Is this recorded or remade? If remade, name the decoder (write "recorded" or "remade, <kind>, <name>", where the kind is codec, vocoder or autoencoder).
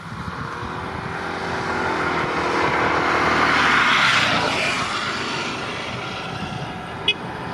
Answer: recorded